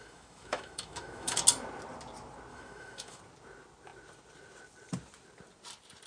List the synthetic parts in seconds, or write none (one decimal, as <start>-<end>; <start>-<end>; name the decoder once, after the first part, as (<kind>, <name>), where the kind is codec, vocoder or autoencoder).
0.0-1.4 (autoencoder, DAC-VAE); 2.5-3.2